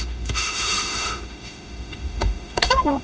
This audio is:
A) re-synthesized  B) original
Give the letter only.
A